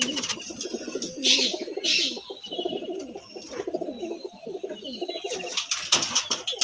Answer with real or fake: real